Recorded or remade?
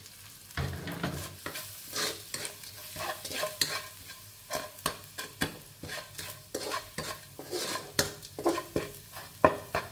recorded